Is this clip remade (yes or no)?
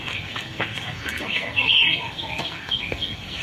yes